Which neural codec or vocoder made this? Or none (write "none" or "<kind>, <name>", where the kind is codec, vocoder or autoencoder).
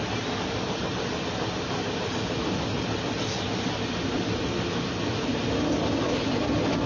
none